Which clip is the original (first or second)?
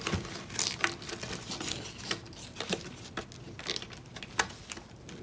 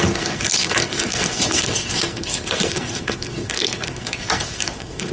first